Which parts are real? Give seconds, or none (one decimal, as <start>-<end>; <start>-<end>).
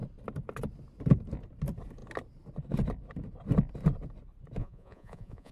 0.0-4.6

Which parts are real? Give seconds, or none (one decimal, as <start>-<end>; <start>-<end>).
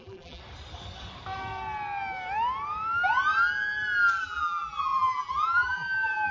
0.4-4.2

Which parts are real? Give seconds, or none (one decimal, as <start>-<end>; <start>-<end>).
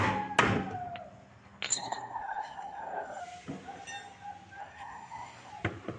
0.0-1.7; 3.2-4.6; 5.5-6.0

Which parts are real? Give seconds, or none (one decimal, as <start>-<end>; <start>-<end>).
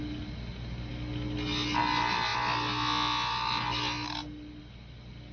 0.0-5.3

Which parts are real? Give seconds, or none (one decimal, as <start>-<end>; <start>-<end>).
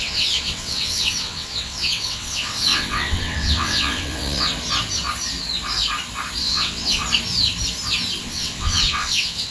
4.5-6.4; 7.0-8.2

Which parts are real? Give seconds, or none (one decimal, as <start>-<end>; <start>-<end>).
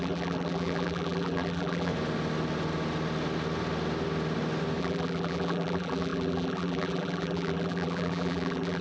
1.9-4.8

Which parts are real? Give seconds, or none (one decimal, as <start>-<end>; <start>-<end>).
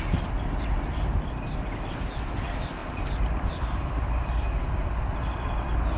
0.0-6.0